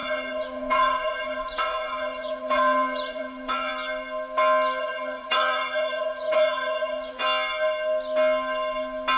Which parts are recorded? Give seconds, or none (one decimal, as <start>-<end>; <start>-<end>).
3.7-4.8; 7.2-9.2